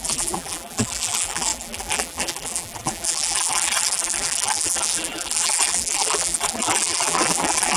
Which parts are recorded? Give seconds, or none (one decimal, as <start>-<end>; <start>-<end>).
none